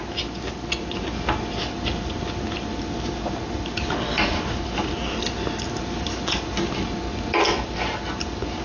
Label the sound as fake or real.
real